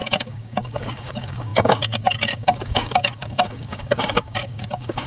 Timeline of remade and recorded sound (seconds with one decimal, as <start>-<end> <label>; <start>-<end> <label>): 0.0-5.1 remade